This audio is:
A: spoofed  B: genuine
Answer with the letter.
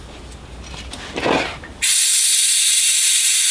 B